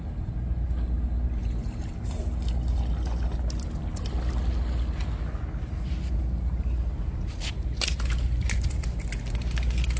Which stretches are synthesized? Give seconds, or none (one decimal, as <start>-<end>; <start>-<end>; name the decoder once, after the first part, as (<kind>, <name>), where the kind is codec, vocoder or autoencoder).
1.4-2.2 (vocoder, BigVGAN v2)